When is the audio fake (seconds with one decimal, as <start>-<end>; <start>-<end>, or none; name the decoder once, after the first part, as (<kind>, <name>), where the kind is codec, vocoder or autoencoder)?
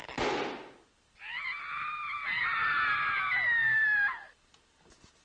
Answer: none